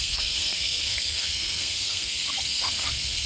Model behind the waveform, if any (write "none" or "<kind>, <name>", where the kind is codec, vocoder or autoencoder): codec, SNAC